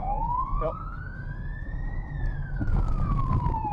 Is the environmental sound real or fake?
fake